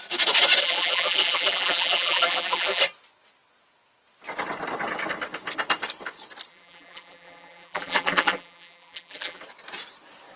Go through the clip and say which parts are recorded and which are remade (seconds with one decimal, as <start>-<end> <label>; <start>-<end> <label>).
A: 0.0-0.6 recorded; 0.6-2.8 remade; 2.8-6.5 recorded; 6.5-9.4 remade; 9.4-10.4 recorded